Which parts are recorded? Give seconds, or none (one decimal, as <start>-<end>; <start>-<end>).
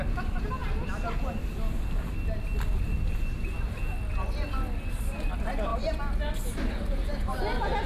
0.0-7.9